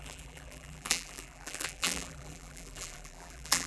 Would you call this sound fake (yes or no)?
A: yes